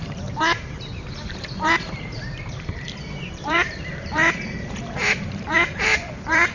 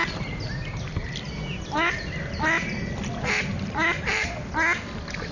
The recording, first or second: second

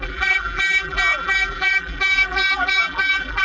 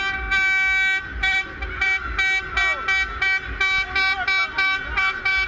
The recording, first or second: second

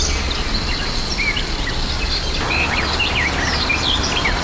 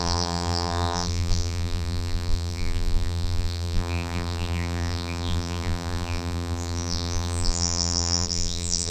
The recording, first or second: first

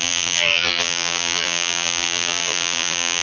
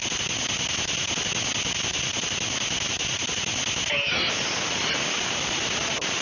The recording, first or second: second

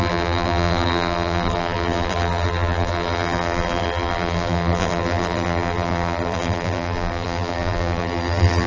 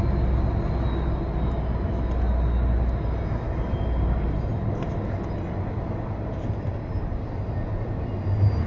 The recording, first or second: second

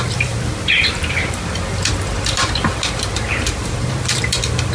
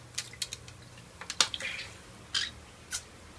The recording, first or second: second